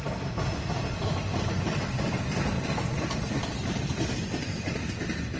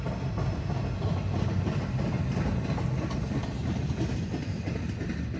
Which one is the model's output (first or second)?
first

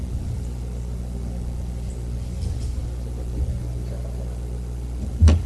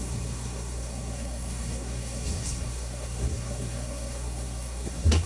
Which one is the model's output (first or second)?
second